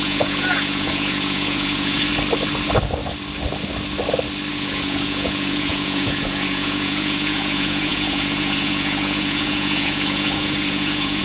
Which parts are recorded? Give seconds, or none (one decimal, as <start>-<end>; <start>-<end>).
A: 2.1-4.5